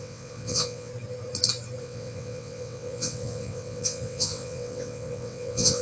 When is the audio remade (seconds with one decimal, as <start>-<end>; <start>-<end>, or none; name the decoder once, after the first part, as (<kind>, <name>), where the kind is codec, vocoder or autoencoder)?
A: 0.0-0.9 (vocoder, WaveNeXt); 1.8-5.8

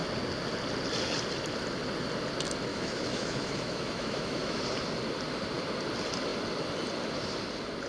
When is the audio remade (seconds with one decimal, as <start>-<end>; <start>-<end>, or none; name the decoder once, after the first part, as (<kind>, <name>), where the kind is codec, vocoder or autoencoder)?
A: 2.7-4.6 (autoencoder, DAC-VAE)

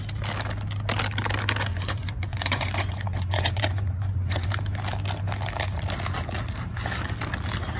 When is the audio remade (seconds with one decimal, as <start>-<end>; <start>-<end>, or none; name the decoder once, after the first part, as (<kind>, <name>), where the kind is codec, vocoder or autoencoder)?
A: 1.7-4.5 (vocoder, Vocos)

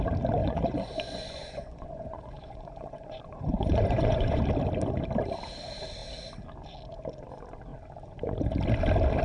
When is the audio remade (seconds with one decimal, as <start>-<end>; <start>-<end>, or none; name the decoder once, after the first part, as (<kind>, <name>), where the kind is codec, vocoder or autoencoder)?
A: 0.4-4.5 (vocoder, Vocos)

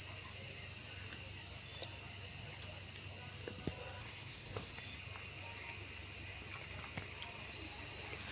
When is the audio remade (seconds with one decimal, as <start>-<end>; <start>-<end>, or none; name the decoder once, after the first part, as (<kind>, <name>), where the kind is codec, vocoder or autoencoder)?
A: 4.0-4.7 (codec, SNAC)

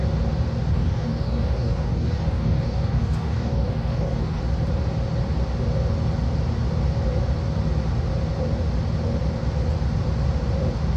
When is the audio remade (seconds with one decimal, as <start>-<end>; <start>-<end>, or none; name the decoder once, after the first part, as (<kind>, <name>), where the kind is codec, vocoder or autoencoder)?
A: 0.7-4.4 (codec, DAC)

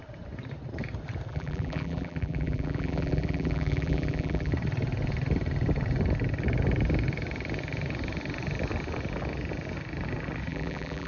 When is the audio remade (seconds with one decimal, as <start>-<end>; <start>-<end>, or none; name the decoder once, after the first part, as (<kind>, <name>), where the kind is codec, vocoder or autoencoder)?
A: 1.3-4.5 (vocoder, BigVGAN v2); 10.5-11.1

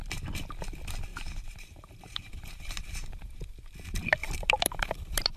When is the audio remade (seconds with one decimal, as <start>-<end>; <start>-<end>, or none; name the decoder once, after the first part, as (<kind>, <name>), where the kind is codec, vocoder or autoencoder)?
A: 1.1-3.4 (vocoder, BigVGAN v2); 4.2-5.4